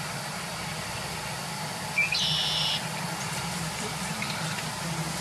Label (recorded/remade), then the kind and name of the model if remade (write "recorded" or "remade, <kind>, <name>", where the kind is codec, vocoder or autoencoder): recorded